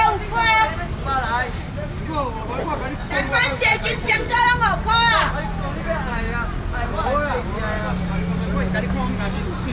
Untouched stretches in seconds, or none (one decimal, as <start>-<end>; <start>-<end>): 0.0-3.0; 4.4-9.7